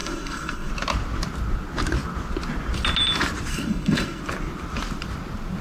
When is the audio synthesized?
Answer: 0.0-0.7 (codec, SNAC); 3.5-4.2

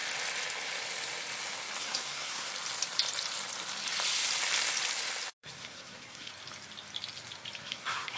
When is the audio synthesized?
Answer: 1.8-2.5 (codec, SNAC); 5.3-6.3; 7.6-8.2